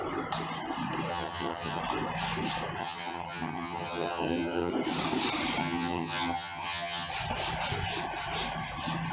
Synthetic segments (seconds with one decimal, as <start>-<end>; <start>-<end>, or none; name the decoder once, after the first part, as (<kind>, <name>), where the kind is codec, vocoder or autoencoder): 1.1-1.8 (vocoder, HiFi-GAN); 2.8-4.7; 5.6-7.1